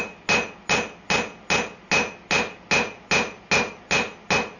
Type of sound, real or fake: real